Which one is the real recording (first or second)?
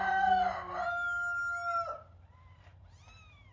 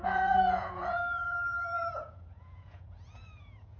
first